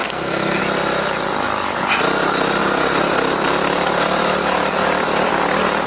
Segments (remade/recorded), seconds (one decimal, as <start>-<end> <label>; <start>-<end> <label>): 0.0-0.6 remade; 0.6-5.9 recorded